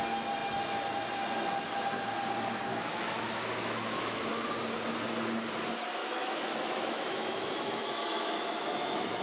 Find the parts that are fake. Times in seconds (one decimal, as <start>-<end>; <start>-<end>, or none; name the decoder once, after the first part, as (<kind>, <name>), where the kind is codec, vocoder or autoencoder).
2.7-4.5 (autoencoder, DAC-VAE); 6.0-9.2